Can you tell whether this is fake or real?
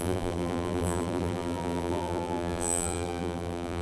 fake